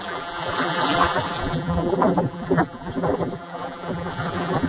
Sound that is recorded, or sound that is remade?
remade